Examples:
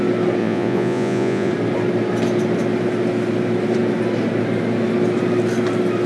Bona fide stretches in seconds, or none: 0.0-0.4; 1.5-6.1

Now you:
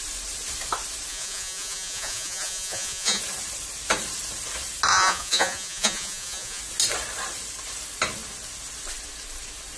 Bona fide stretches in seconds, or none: 0.0-1.1; 3.2-4.9; 6.6-9.8